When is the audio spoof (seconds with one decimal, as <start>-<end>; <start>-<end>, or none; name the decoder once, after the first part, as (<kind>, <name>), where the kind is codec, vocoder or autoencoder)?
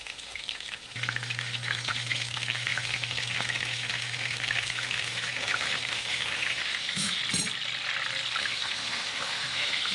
0.0-7.2 (autoencoder, DAC-VAE); 8.4-9.9